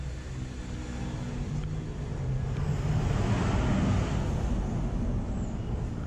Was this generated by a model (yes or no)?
no